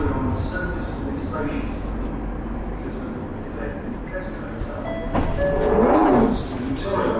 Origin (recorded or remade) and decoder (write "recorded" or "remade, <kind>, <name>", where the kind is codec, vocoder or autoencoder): recorded